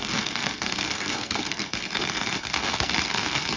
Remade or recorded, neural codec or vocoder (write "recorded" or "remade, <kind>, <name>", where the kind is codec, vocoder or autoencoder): remade, codec, SNAC